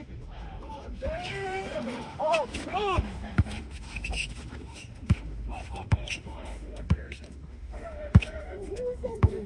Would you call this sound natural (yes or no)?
no